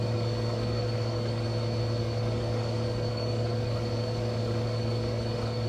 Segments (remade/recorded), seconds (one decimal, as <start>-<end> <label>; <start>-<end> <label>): 0.0-1.5 remade; 1.5-2.0 recorded; 2.0-5.7 remade